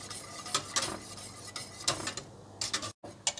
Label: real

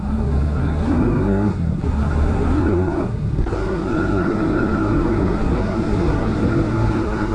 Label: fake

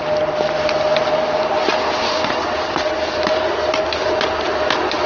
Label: real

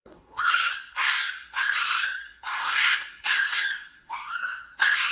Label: fake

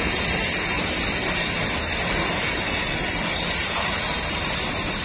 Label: real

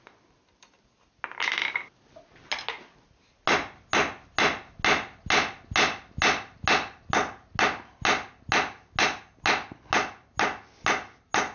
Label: real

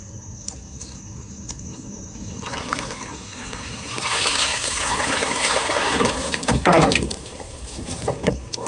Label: fake